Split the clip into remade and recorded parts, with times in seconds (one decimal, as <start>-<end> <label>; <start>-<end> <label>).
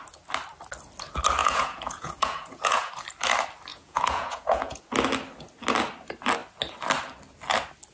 0.0-1.4 recorded; 1.4-2.9 remade; 2.9-3.7 recorded; 3.7-4.8 remade; 4.8-7.9 recorded